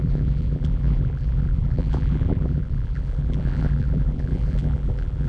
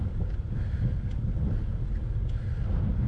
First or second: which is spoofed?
first